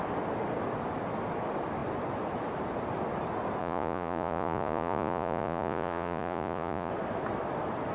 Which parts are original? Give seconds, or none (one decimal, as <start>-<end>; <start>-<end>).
0.0-3.6; 6.9-7.9